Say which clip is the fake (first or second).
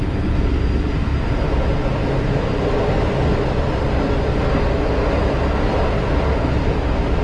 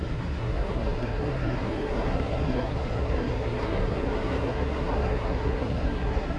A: second